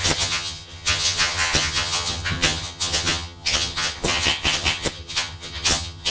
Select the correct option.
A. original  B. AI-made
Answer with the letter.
B